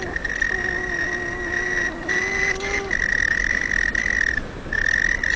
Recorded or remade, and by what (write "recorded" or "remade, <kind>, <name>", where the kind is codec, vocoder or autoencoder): recorded